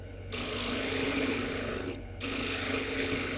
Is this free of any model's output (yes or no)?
no